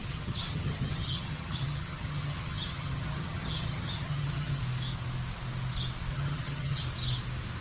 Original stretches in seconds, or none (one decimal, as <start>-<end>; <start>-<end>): 4.6-6.1; 6.8-7.6